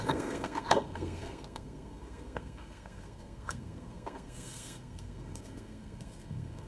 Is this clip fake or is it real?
fake